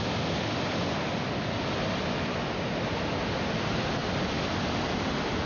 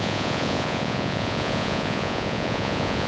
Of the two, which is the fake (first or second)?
second